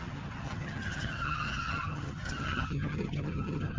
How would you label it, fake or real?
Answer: fake